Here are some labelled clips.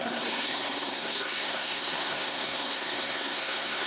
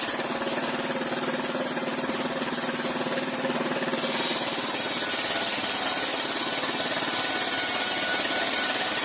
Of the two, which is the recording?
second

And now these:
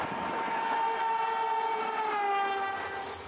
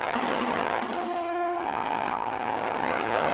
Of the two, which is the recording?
first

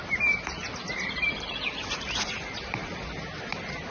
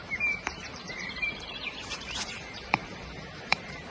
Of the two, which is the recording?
first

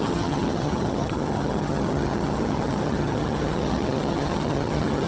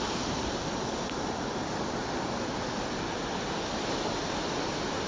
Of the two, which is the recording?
second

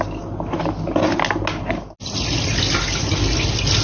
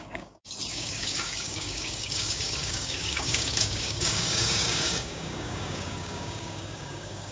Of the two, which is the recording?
first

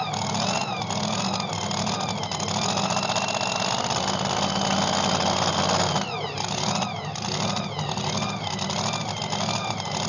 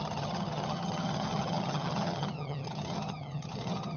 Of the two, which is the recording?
first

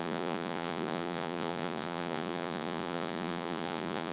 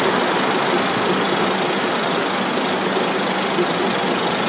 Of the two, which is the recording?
second